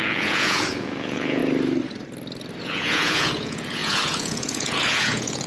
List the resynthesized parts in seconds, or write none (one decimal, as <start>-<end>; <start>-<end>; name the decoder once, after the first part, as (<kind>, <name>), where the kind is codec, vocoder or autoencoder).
0.0-1.4 (vocoder, Vocos); 2.6-5.5

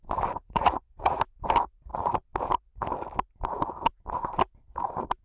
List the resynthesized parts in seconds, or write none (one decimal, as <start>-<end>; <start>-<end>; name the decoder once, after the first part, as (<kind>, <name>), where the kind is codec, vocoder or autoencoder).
0.4-1.2 (vocoder, Vocos)

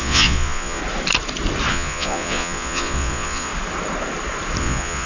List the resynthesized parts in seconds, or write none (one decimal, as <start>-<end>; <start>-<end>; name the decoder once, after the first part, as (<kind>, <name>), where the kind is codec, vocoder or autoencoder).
0.0-0.8 (vocoder, Vocos); 1.7-3.5; 4.6-5.1

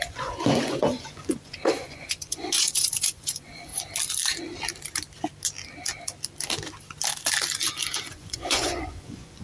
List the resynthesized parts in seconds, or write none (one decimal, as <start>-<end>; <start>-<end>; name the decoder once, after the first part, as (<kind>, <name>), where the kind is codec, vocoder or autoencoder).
0.0-3.7 (vocoder, Vocos); 8.0-9.4

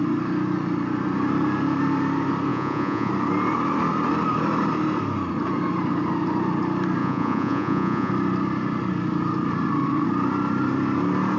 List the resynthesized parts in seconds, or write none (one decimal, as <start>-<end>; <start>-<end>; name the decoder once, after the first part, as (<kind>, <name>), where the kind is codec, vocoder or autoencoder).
2.5-3.1 (vocoder, Vocos); 7.0-8.1